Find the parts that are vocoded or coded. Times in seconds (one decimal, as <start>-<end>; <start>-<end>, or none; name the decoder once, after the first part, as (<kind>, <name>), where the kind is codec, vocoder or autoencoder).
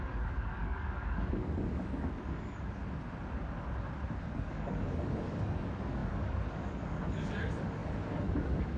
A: 0.0-2.8 (codec, DAC); 4.2-8.8